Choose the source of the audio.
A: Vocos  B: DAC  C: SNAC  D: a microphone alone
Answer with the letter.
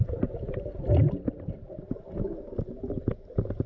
D